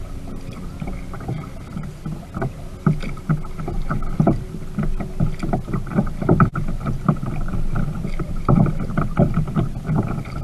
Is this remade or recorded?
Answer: recorded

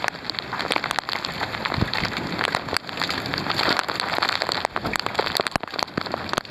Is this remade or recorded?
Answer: recorded